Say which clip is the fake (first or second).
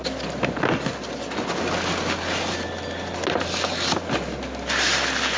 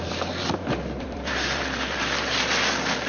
second